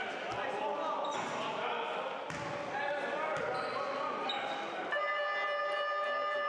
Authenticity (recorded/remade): recorded